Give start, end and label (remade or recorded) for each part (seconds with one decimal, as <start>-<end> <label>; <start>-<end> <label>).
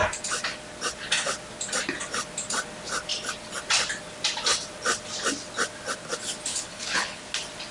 0.0-6.5 recorded; 6.5-7.2 remade; 7.2-7.7 recorded